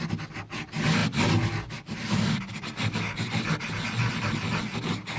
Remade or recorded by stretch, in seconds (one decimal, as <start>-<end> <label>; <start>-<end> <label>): 0.0-5.2 recorded